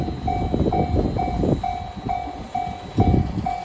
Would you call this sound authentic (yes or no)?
yes